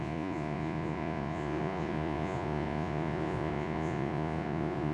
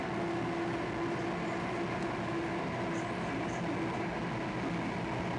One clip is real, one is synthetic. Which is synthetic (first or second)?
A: first